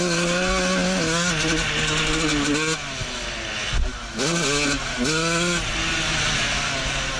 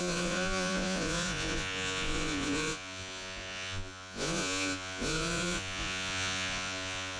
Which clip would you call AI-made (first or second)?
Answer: second